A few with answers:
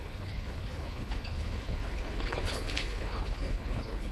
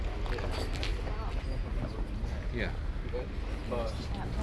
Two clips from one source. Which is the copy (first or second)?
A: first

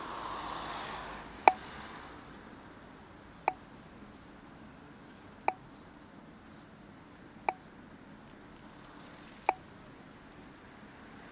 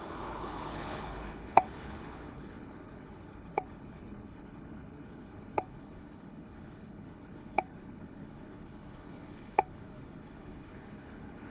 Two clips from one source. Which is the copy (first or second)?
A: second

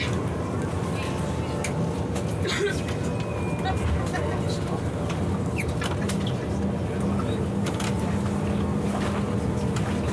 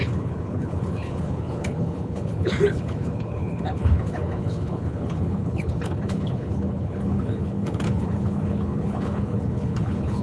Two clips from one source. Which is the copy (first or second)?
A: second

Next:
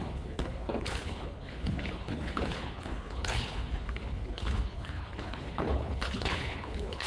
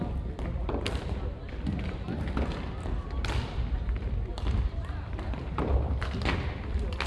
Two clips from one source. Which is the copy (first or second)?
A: first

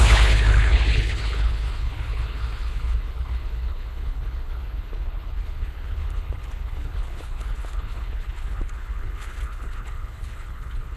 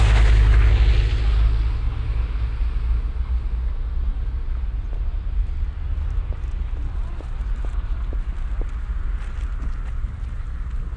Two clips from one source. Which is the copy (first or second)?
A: first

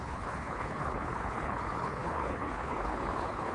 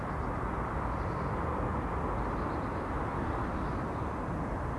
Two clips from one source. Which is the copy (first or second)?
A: first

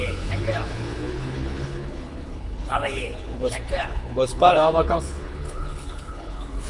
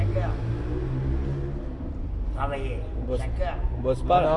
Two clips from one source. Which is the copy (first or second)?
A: first